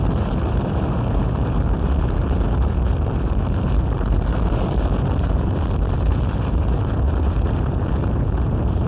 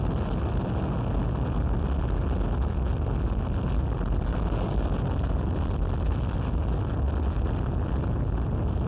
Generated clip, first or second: first